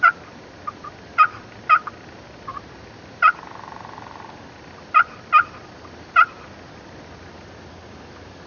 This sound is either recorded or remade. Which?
recorded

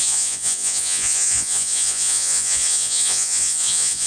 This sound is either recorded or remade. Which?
remade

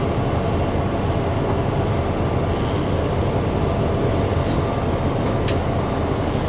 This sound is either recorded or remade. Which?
recorded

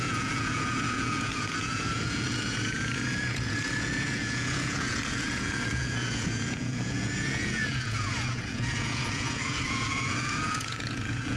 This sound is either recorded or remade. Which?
remade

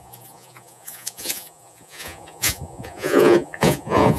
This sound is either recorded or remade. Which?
remade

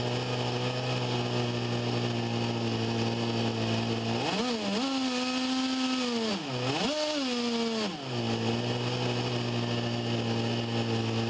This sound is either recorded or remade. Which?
recorded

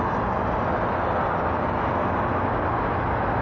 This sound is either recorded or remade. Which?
recorded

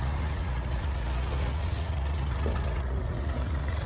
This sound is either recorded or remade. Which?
remade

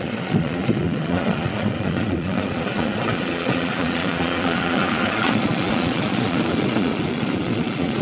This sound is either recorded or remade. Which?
remade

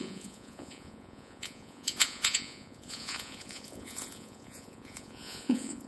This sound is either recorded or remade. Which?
remade